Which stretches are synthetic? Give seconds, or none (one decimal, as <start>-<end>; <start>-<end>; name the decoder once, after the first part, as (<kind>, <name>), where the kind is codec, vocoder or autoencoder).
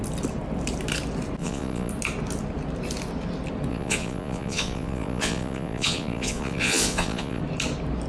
1.4-1.9 (vocoder, Vocos); 3.7-7.4